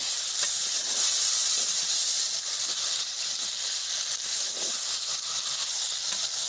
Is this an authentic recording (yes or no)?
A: yes